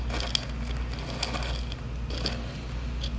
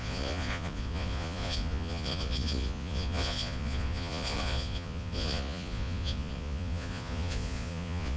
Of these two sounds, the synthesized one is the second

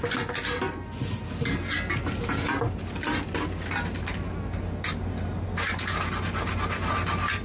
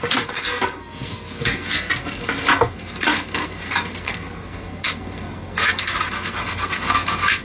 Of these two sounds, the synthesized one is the second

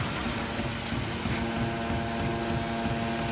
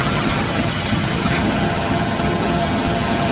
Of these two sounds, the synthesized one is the second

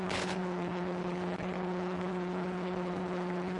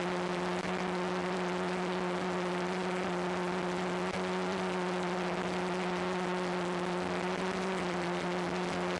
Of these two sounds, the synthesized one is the first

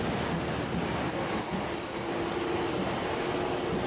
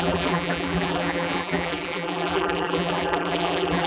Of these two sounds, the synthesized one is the second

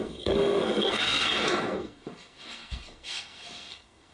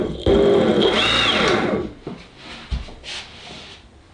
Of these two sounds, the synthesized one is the first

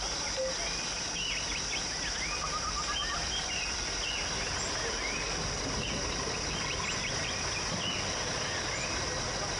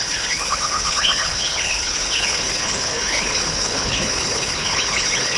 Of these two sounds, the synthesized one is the second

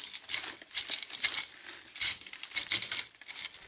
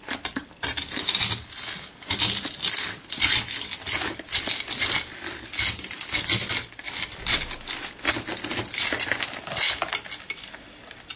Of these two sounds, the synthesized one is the first